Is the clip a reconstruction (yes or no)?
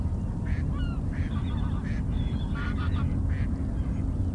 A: no